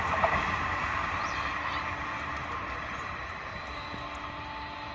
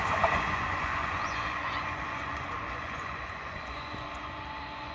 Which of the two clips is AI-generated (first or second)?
second